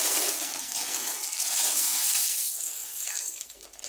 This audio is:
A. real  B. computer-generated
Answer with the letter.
B